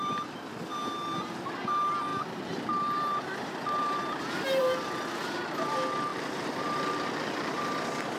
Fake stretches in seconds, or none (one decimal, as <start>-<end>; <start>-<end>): 0.7-1.6; 2.1-4.0; 6.1-7.6